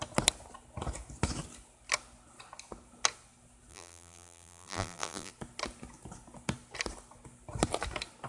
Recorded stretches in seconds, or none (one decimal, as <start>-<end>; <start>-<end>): 0.0-3.7; 5.3-8.3